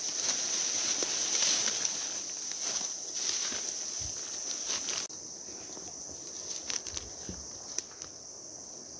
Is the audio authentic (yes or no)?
yes